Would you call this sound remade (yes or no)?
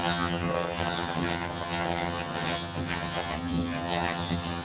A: yes